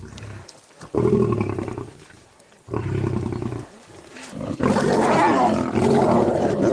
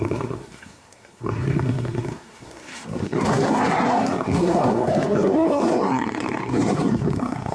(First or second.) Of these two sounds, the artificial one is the second